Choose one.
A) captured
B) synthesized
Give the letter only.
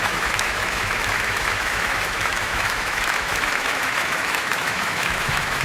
B